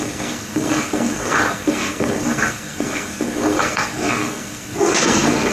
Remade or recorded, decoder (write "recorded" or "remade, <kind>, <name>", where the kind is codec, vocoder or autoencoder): remade, codec, SNAC